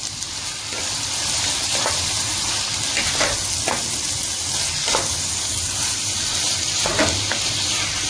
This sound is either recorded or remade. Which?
recorded